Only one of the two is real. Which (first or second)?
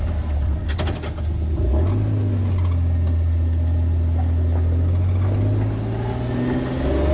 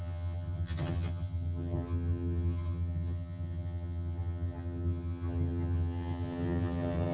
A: first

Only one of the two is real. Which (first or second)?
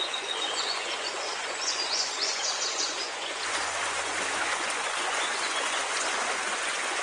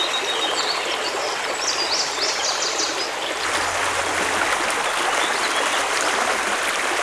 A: second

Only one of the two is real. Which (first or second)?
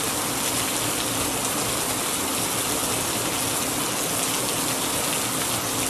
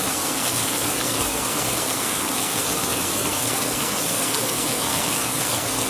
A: first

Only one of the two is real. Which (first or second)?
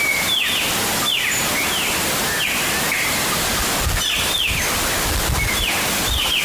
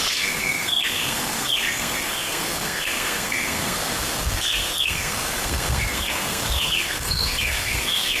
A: first